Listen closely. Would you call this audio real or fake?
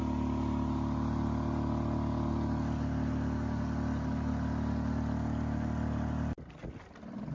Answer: real